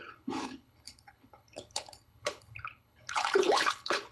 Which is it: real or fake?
fake